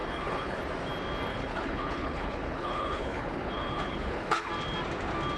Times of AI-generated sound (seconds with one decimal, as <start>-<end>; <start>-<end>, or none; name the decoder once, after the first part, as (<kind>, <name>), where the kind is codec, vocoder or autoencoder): 0.0-0.6 (codec, HILCodec); 1.3-4.5